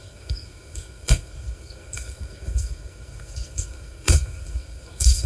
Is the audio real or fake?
fake